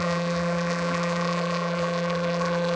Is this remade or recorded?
remade